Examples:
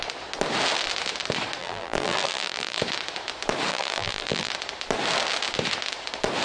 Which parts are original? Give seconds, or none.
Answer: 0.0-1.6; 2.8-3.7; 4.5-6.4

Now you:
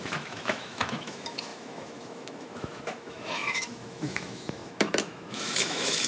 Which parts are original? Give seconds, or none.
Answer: none

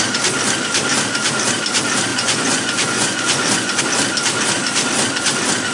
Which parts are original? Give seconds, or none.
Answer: 0.0-2.1; 3.8-5.7

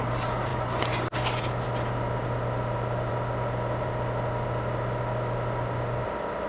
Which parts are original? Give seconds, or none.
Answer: 0.0-6.5

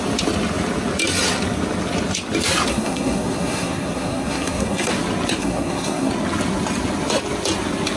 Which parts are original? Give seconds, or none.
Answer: 0.0-2.7; 4.9-5.4; 6.1-8.0

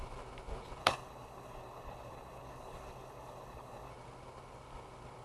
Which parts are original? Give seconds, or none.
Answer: 0.0-0.8; 3.9-5.2

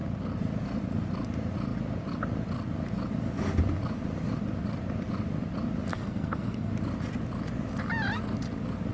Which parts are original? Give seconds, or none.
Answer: 0.0-5.9; 6.7-8.9